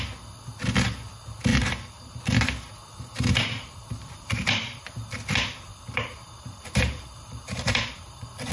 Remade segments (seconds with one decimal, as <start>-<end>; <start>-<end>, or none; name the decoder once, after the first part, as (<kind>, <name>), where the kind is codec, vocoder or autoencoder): 1.5-2.2 (vocoder, BigVGAN v2); 2.8-4.8; 5.7-8.5